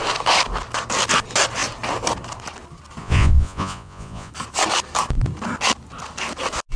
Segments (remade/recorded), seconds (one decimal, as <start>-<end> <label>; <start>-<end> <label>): 0.0-3.0 recorded; 3.0-4.3 remade; 4.3-6.8 recorded